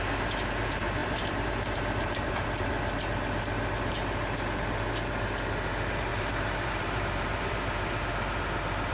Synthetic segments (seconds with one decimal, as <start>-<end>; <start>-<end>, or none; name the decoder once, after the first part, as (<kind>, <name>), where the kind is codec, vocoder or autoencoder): 1.0-2.7 (vocoder, BigVGAN v2); 6.1-8.1